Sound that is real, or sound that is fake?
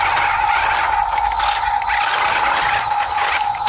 real